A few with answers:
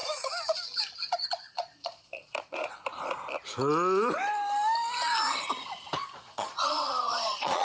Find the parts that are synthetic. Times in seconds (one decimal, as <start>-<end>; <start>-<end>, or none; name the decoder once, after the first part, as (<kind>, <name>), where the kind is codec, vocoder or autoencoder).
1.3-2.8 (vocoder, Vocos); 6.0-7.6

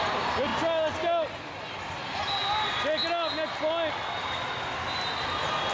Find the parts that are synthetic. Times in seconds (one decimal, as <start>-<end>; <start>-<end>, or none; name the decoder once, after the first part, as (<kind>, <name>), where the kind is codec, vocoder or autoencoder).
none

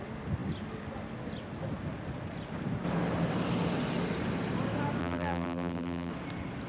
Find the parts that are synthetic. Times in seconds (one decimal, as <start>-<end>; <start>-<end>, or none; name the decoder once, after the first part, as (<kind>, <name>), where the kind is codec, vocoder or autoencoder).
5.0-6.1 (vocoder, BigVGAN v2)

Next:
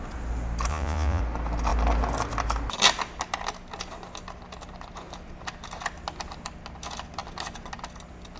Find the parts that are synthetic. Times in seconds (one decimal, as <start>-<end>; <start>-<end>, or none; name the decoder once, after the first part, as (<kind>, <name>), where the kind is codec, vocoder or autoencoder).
0.7-1.2 (vocoder, Vocos)

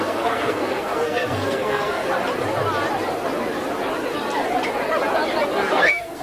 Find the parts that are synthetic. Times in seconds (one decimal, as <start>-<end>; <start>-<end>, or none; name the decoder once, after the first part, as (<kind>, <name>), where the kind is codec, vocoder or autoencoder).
0.0-2.0 (codec, SNAC); 5.7-6.2